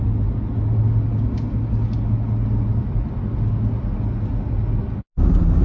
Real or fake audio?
real